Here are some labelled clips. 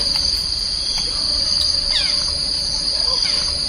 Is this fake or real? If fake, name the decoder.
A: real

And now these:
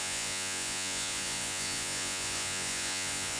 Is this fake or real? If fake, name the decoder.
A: fake, vocoder, Vocos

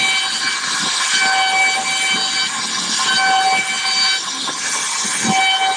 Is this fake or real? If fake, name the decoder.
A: real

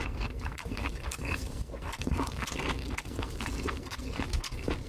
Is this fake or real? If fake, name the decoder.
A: fake, codec, SNAC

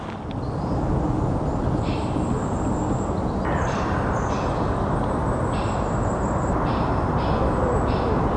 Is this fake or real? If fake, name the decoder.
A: real